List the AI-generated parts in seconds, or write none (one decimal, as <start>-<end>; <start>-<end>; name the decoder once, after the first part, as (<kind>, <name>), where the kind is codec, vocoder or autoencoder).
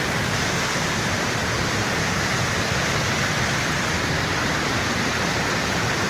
1.4-2.4 (vocoder, BigVGAN v2)